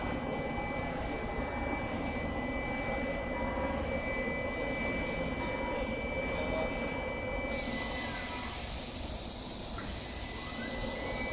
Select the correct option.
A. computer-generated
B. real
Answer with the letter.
B